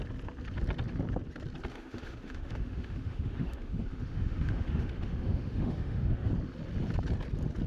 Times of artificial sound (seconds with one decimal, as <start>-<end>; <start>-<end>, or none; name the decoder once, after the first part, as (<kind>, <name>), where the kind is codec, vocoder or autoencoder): 1.7-6.3 (autoencoder, DAC-VAE)